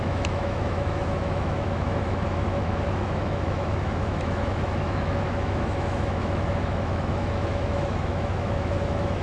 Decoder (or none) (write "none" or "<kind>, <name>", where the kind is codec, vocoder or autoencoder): autoencoder, DAC-VAE